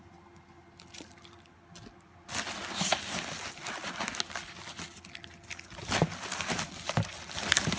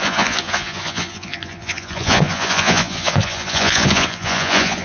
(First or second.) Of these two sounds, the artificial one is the second